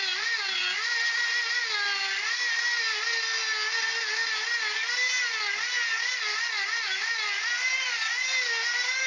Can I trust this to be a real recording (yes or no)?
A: yes